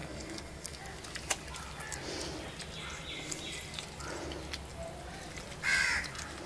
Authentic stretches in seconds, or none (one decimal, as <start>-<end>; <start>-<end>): 0.8-6.5